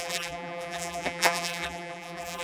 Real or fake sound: fake